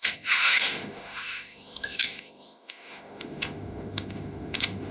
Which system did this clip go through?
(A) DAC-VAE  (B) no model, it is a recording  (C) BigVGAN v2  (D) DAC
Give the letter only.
A